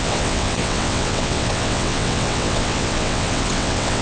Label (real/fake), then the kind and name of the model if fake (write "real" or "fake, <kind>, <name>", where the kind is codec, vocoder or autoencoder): fake, vocoder, WaveNeXt